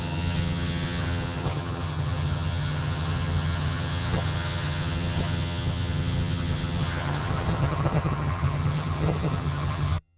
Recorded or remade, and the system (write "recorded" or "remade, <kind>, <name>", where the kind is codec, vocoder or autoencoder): remade, vocoder, HiFi-GAN